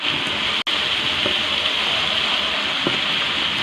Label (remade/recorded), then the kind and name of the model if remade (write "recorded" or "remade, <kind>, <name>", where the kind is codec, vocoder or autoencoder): recorded